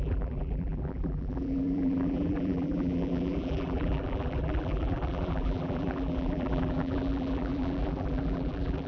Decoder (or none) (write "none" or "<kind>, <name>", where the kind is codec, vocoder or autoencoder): vocoder, BigVGAN v2